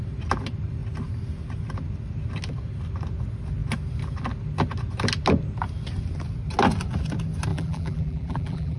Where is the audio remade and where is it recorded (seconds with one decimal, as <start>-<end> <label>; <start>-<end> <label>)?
0.0-7.5 recorded; 7.5-8.8 remade